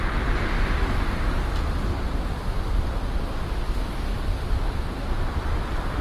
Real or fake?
real